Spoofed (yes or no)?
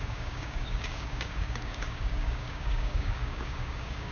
yes